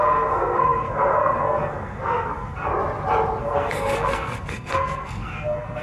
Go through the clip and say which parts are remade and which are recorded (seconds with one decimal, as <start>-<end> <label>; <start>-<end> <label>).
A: 0.0-2.7 remade; 2.7-3.4 recorded; 3.4-5.8 remade